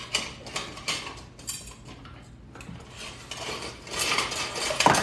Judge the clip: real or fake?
real